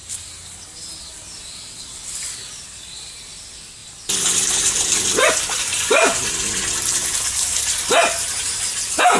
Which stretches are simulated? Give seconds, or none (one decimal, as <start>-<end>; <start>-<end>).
5.7-6.3; 7.0-8.7